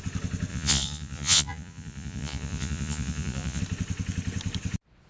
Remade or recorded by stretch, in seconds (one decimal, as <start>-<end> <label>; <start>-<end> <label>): 0.0-0.5 recorded; 0.5-3.6 remade; 3.6-5.1 recorded